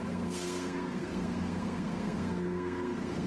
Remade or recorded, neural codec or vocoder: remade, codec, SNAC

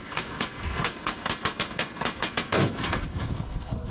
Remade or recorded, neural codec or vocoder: remade, codec, SNAC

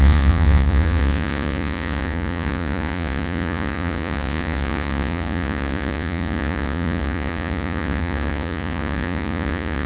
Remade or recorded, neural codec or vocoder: remade, vocoder, Vocos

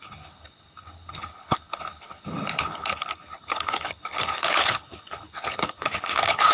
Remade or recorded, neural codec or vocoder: remade, codec, HILCodec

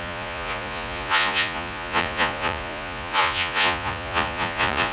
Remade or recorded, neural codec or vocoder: remade, vocoder, Vocos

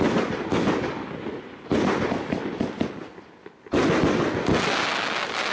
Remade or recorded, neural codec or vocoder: recorded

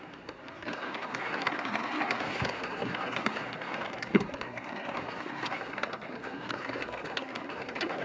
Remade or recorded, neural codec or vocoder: remade, codec, SNAC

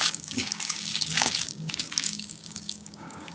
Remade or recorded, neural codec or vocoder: remade, codec, DAC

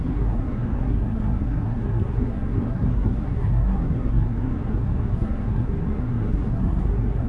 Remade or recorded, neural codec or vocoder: remade, codec, SNAC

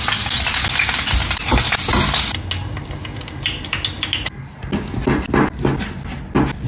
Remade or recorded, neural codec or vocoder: recorded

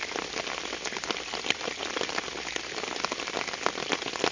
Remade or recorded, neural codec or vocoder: recorded